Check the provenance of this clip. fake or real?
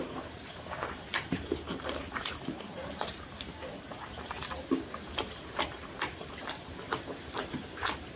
fake